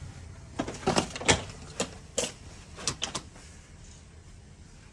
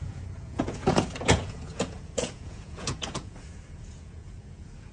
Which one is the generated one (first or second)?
second